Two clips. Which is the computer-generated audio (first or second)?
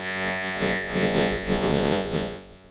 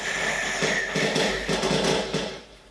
first